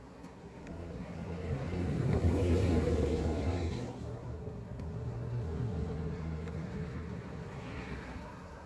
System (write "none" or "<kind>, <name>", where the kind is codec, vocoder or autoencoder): codec, SNAC